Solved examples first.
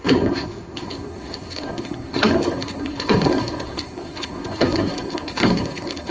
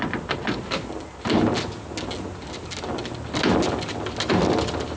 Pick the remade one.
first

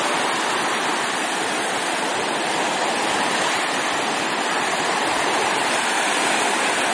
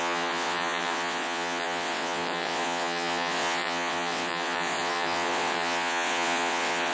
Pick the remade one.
second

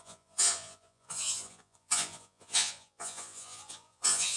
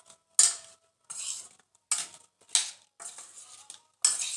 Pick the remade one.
first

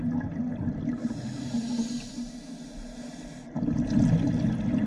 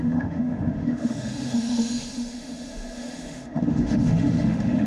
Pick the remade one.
second